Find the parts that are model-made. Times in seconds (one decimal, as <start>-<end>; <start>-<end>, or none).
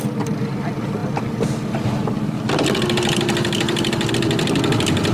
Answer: none